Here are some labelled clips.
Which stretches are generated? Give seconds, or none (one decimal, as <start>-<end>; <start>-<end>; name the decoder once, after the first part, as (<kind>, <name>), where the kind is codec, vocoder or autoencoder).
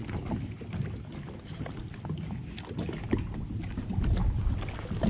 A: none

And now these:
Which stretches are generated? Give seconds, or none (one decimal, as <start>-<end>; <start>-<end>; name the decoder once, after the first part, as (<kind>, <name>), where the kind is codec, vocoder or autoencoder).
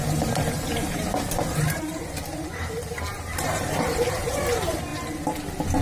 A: 0.0-4.9 (vocoder, BigVGAN v2)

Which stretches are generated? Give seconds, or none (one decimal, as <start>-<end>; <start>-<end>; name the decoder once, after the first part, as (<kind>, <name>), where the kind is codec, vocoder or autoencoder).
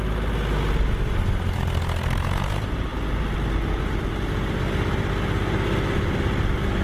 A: none